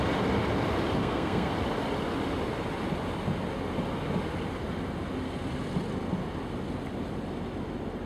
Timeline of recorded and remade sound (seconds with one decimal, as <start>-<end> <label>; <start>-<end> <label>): 0.0-1.0 recorded; 1.0-1.5 remade; 1.5-8.1 recorded